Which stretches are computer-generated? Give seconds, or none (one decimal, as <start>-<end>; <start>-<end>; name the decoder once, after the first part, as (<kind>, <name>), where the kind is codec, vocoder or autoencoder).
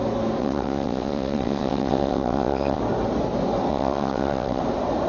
0.4-2.8 (vocoder, WaveNeXt); 3.7-4.6